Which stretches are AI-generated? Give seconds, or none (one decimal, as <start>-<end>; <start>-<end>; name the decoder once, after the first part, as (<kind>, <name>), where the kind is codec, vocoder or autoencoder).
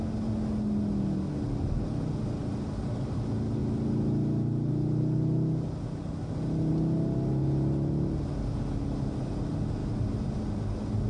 none